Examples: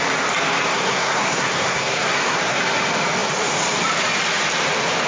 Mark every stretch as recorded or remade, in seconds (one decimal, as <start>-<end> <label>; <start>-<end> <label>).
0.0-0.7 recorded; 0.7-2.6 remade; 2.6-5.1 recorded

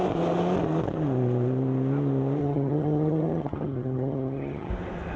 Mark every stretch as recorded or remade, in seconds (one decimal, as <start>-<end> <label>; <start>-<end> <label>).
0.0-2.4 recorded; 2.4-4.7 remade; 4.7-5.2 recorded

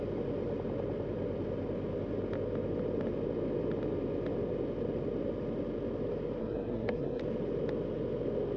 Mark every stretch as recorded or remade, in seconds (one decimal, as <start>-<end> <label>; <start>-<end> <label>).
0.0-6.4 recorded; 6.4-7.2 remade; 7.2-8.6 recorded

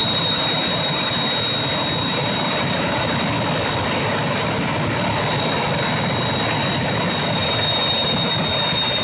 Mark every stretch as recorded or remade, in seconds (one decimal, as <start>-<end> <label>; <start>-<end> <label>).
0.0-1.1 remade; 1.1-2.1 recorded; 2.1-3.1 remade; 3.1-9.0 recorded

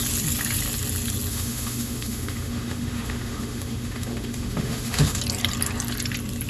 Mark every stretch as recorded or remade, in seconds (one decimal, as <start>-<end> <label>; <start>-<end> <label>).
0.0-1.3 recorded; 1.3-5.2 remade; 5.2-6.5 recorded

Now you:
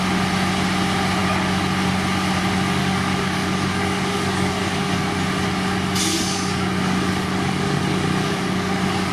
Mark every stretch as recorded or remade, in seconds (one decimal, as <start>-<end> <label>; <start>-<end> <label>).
0.0-2.8 recorded; 2.8-5.1 remade; 5.1-6.1 recorded; 6.1-9.1 remade